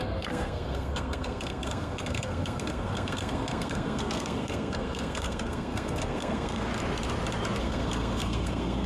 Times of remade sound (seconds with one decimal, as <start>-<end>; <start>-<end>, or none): 0.0-6.7; 7.6-8.9